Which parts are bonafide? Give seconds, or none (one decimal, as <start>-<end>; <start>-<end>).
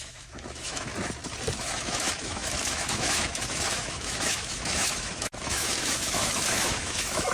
0.9-1.5